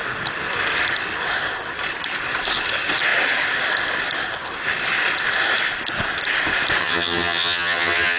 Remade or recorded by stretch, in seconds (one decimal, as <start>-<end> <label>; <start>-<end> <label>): 0.0-6.8 recorded; 6.8-8.2 remade